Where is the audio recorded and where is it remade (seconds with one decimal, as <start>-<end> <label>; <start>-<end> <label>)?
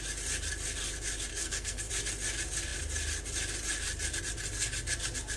0.0-1.3 recorded; 1.3-1.9 remade; 1.9-5.4 recorded